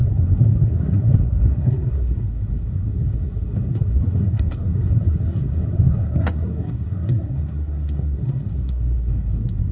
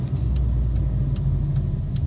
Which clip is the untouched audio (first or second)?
second